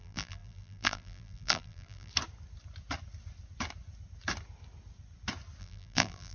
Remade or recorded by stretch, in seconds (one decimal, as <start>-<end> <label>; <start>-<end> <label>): 0.0-2.1 remade; 2.1-5.6 recorded; 5.6-6.3 remade